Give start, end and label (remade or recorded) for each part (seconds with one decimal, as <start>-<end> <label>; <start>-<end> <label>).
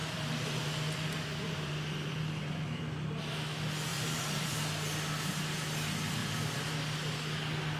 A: 0.0-2.8 remade; 2.8-3.9 recorded; 3.9-4.5 remade; 4.5-6.2 recorded; 6.2-6.7 remade; 6.7-7.8 recorded